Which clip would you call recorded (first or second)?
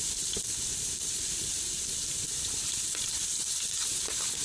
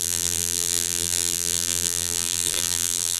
first